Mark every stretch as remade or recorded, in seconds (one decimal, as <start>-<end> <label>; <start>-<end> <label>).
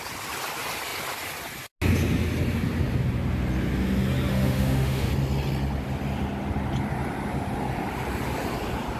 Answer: 0.0-4.3 recorded; 4.3-5.1 remade; 5.1-9.0 recorded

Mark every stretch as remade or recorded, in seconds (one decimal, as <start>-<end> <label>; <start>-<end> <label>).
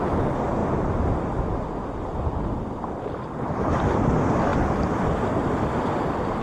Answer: 0.0-6.4 recorded